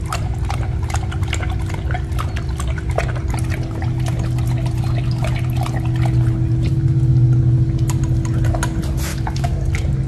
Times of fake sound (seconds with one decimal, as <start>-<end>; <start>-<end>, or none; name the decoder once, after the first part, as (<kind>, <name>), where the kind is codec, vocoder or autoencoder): 9.1-9.7 (codec, DAC)